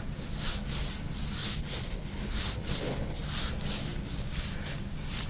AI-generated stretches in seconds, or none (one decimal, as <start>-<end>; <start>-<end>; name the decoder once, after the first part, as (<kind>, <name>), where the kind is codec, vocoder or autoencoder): 1.4-3.2 (codec, HILCodec)